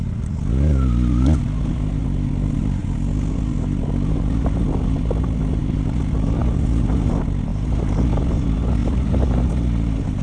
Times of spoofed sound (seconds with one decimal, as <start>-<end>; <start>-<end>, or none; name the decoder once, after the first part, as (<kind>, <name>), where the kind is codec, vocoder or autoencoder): 8.8-9.4 (vocoder, BigVGAN v2)